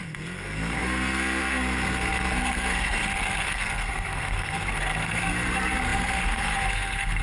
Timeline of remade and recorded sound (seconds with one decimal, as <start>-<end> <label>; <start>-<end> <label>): 0.0-7.2 remade